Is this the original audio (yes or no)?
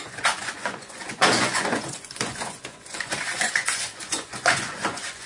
no